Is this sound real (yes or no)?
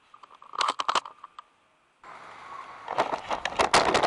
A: yes